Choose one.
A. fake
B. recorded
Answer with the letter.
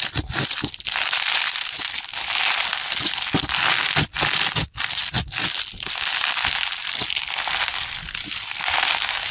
B